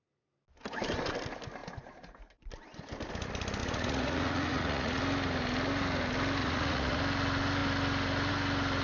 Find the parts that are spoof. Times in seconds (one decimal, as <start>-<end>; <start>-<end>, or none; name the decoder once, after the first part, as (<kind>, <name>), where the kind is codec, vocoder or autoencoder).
3.6-5.0 (vocoder, Vocos); 6.4-7.0